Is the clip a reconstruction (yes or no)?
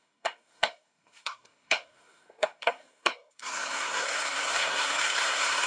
yes